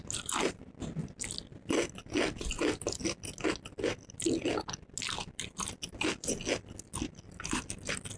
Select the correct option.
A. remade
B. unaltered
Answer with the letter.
B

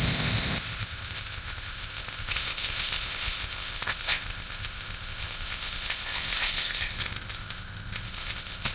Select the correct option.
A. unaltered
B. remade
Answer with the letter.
B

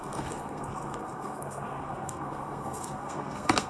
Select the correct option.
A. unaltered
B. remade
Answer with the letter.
B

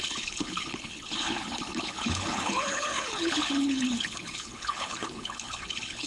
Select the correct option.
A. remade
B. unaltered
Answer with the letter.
A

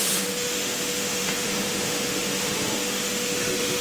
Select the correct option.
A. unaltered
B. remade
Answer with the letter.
B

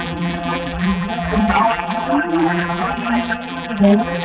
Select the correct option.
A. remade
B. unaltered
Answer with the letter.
A